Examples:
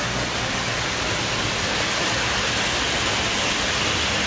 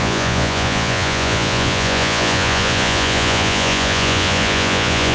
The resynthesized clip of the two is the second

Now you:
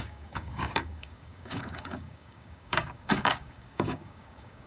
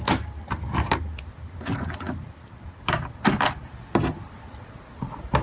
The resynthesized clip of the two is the first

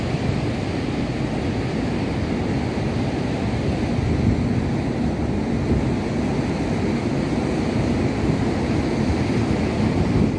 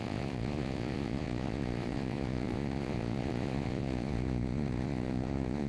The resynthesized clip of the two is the second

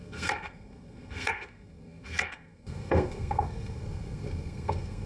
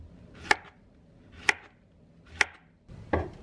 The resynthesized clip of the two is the first